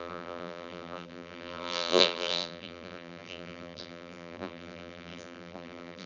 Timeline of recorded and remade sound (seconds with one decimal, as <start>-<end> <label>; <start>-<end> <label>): 0.0-6.1 remade

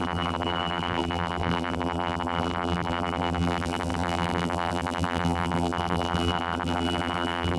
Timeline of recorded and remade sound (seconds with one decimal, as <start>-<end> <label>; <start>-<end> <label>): 0.0-7.6 remade

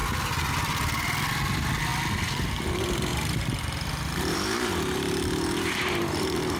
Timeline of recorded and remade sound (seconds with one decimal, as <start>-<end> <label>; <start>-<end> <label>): 0.0-3.1 recorded; 3.1-6.6 remade

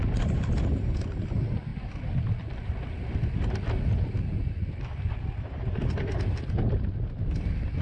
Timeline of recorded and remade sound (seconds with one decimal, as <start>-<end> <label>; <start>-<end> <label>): 0.0-7.8 recorded

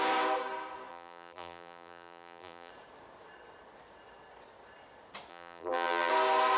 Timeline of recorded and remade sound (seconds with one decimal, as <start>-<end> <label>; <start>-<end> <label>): 0.0-0.9 recorded; 0.9-2.7 remade; 2.7-5.3 recorded; 5.3-6.1 remade; 6.1-6.6 recorded

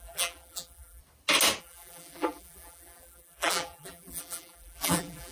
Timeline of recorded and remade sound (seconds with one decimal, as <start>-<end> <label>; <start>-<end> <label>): 0.0-1.0 remade; 1.0-1.6 recorded; 1.6-5.3 remade